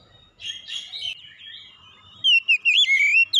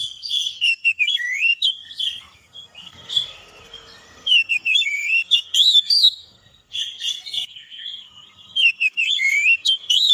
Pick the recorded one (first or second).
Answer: first